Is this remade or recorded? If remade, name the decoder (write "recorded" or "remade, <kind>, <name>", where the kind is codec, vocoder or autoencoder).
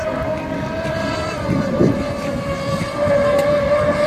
recorded